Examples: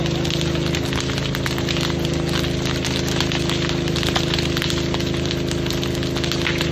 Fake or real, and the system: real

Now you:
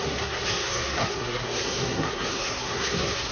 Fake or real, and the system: fake, codec, SNAC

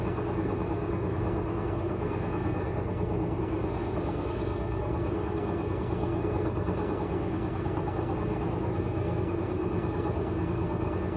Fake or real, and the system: fake, codec, SNAC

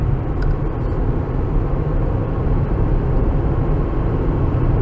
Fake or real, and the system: real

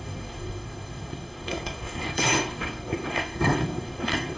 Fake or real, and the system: fake, codec, SNAC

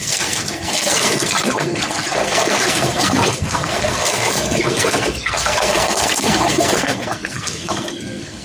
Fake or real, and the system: fake, codec, SNAC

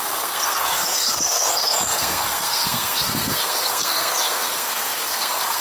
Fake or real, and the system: fake, codec, SNAC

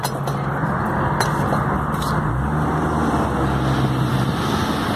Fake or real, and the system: real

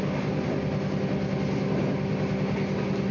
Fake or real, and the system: real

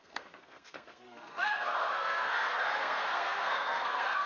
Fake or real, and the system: fake, codec, SNAC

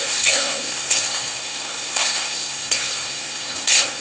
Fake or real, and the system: fake, codec, SNAC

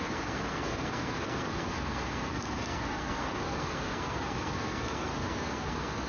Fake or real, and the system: fake, codec, SNAC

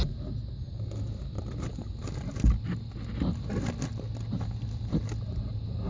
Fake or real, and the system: real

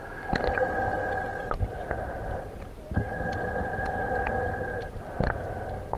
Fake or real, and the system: real